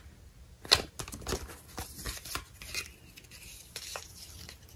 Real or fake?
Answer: real